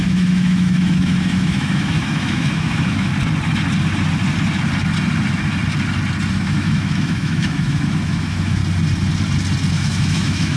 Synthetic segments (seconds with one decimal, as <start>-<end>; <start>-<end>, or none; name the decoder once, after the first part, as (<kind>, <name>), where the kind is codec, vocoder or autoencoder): 0.0-3.1 (autoencoder, DAC-VAE); 6.3-8.6; 9.7-10.6